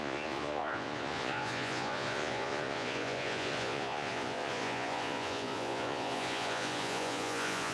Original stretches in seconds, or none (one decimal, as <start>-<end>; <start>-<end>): none